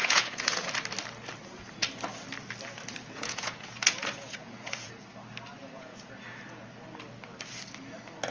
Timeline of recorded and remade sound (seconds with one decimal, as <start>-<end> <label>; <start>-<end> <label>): 0.0-0.7 remade; 0.7-3.0 recorded; 3.0-4.9 remade; 4.9-5.6 recorded; 5.6-6.1 remade; 6.1-8.3 recorded